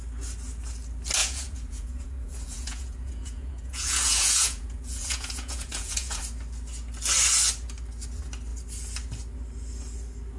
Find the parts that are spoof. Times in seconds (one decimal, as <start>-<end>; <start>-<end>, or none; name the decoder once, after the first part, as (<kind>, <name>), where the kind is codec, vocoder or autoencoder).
1.2-6.2 (vocoder, Vocos)